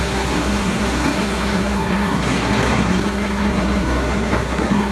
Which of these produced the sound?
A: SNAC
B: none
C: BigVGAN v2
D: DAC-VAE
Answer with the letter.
A